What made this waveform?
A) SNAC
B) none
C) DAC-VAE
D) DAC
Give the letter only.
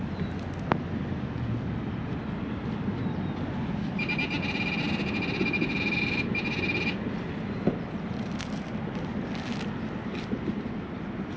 B